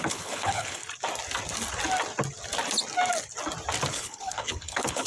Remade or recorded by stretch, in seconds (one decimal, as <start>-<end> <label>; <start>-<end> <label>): 0.0-0.8 remade; 0.8-3.9 recorded; 3.9-5.1 remade